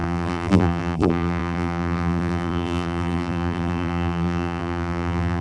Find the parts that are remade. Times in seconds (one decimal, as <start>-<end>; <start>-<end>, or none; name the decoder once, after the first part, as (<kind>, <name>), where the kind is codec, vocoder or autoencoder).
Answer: 0.0-5.4 (vocoder, BigVGAN v2)